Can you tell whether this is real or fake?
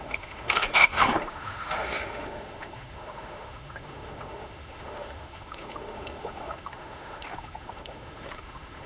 fake